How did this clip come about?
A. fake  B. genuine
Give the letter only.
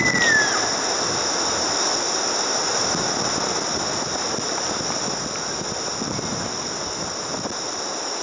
B